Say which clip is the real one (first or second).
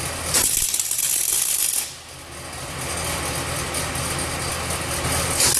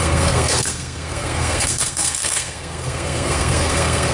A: first